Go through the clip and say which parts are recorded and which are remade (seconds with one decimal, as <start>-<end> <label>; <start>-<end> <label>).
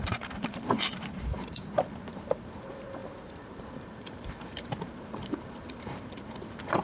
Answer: 0.0-6.8 remade